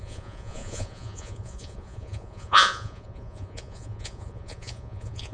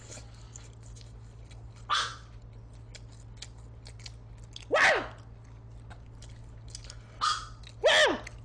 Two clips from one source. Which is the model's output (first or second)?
first